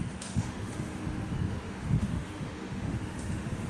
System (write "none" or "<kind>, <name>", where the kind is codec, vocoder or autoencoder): autoencoder, DAC-VAE